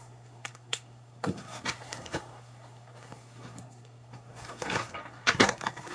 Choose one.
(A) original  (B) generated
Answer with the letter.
B